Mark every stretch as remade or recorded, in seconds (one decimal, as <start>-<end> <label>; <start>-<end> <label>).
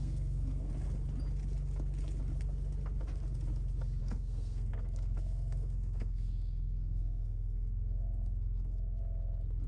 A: 0.0-0.7 remade; 0.7-4.0 recorded; 4.0-9.0 remade; 9.0-9.7 recorded